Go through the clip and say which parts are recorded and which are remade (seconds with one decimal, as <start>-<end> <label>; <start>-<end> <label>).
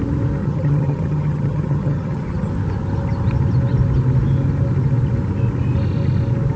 0.0-0.4 recorded; 0.4-2.5 remade; 2.5-6.6 recorded